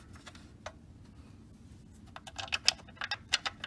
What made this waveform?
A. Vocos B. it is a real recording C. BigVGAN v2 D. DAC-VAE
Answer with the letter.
B